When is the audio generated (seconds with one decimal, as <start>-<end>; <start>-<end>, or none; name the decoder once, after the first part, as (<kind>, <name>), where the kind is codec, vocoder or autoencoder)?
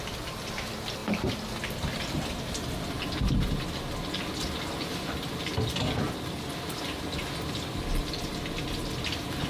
none